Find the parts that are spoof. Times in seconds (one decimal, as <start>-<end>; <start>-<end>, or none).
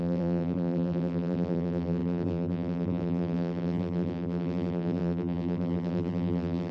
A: 0.0-6.7